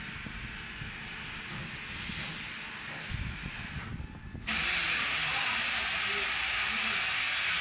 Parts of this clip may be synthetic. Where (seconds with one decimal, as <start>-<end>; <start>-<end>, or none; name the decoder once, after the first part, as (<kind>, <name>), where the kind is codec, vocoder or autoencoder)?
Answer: none